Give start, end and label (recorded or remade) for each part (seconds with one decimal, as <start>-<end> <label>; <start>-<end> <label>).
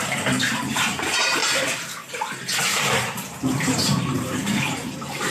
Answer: 0.0-1.4 remade; 1.4-2.6 recorded; 2.6-5.3 remade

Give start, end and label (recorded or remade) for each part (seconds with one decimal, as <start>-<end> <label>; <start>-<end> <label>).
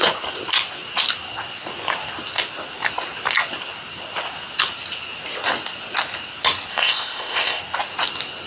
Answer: 0.0-6.7 recorded; 6.7-7.6 remade; 7.6-8.5 recorded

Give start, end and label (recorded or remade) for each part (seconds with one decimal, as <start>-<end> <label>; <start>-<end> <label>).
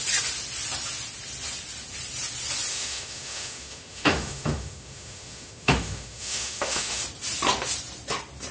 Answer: 0.0-2.7 recorded; 2.7-7.0 remade; 7.0-8.5 recorded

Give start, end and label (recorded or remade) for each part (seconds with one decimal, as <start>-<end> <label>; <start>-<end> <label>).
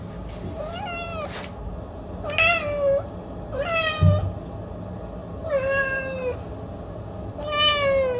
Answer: 0.0-8.2 recorded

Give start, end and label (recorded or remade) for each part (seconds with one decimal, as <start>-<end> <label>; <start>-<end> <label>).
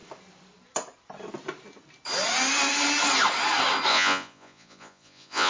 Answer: 0.0-3.9 recorded; 3.9-5.5 remade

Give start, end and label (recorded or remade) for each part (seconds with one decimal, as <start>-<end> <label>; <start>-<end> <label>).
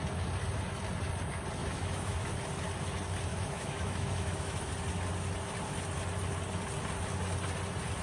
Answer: 0.0-1.6 recorded; 1.6-2.3 remade; 2.3-3.3 recorded; 3.3-4.7 remade; 4.7-8.0 recorded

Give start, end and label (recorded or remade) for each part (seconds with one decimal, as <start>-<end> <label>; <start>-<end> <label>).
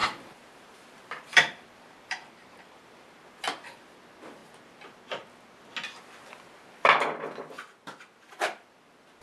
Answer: 0.0-3.8 remade; 3.8-9.2 recorded